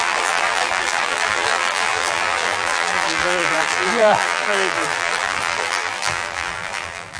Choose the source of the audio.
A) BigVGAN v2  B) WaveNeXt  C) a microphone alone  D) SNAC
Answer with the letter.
A